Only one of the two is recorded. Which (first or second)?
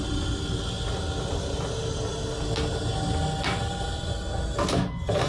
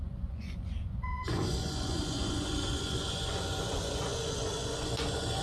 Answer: first